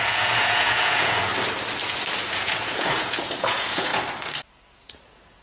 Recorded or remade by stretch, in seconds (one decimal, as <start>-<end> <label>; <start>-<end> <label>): 0.0-1.3 remade; 1.3-2.3 recorded; 2.3-3.9 remade; 3.9-4.5 recorded; 4.5-5.4 remade